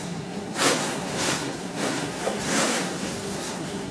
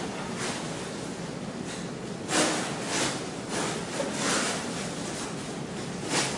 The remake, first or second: first